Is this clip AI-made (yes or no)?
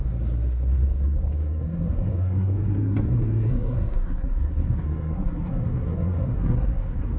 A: yes